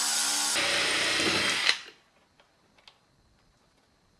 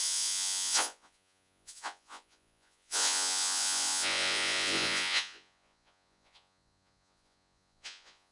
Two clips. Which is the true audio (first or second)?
first